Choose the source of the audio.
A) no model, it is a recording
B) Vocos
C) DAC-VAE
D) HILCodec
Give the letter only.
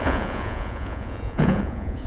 B